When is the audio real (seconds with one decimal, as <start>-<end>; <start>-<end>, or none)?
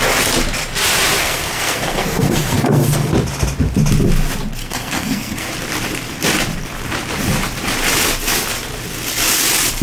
0.0-1.2; 3.1-4.6; 5.5-9.8